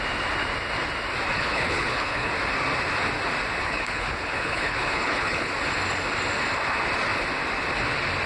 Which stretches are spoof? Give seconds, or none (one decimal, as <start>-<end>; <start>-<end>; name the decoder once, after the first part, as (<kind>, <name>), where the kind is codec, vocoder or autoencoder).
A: 1.3-2.3 (codec, HILCodec); 3.6-5.5